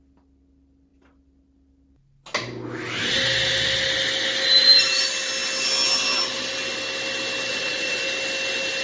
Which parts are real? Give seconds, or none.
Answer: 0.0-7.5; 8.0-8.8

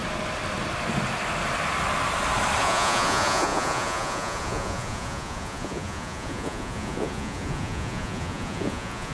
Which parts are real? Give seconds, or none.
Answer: 0.0-2.6

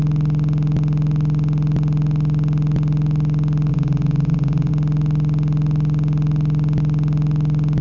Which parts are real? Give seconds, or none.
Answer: 0.0-3.7; 4.7-7.8

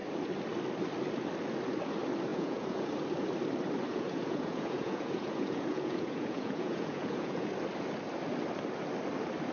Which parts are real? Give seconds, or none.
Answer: 0.0-2.3; 2.9-3.9; 7.5-9.5

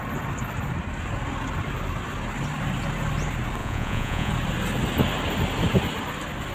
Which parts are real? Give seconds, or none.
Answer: 0.0-3.6; 4.3-6.5

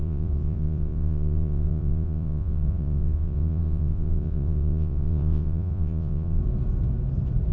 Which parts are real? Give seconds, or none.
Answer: 6.4-7.5

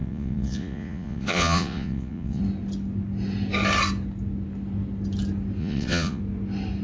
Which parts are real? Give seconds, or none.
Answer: 2.4-5.6; 6.2-6.8